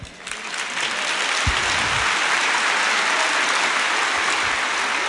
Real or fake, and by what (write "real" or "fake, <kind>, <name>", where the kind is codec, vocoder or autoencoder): real